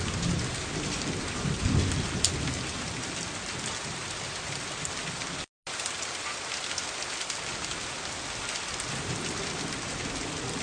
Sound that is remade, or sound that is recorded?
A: recorded